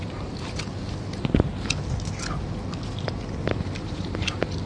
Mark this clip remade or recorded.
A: recorded